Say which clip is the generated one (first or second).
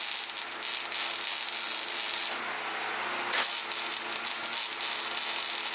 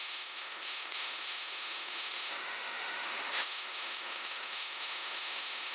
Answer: second